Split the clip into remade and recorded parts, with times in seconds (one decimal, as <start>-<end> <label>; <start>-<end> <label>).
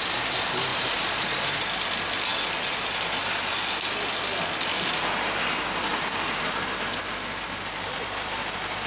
0.0-0.7 recorded; 0.7-1.5 remade; 1.5-8.9 recorded